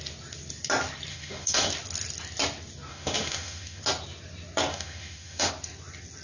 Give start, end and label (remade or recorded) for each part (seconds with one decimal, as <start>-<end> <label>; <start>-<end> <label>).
0.0-1.1 recorded; 1.1-1.7 remade; 1.7-2.9 recorded; 2.9-3.8 remade; 3.8-4.7 recorded; 4.7-5.5 remade; 5.5-6.2 recorded